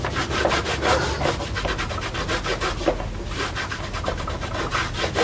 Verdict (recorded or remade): recorded